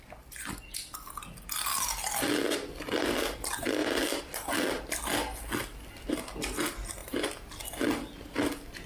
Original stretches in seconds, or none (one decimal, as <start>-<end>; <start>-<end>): 0.0-3.8; 6.1-7.0; 8.1-8.9